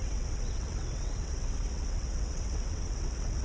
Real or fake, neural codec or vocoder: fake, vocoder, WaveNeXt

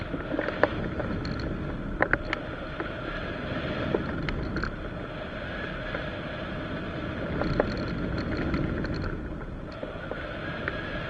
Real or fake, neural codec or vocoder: real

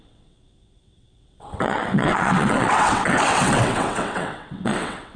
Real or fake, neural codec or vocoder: fake, vocoder, WaveNeXt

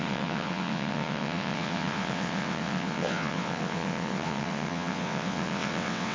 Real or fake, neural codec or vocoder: fake, vocoder, WaveNeXt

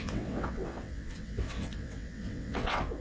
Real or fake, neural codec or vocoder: fake, vocoder, WaveNeXt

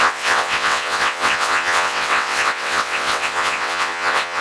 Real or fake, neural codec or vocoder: fake, vocoder, WaveNeXt